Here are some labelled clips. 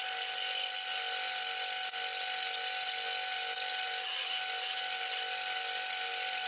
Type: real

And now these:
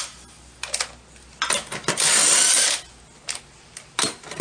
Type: real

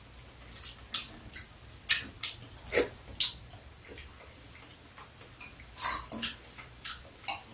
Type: real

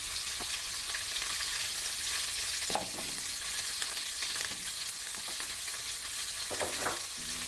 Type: fake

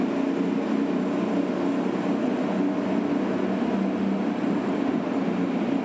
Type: real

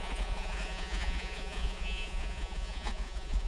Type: fake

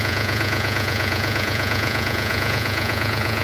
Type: fake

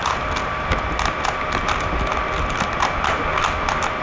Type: real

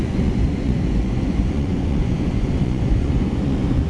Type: fake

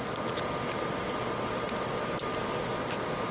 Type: real